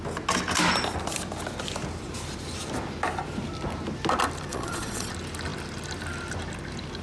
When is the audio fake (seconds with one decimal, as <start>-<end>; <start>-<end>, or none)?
4.5-5.1